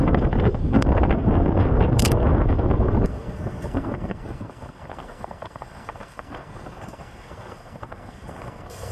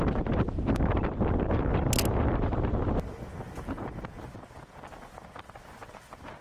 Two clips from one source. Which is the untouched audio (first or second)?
second